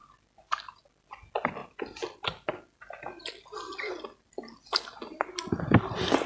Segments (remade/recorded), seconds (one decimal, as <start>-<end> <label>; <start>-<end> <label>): 0.0-6.3 recorded